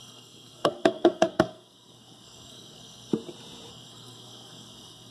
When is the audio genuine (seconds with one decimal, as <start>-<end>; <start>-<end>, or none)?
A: 3.1-3.7